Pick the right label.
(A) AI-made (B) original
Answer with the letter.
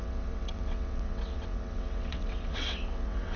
A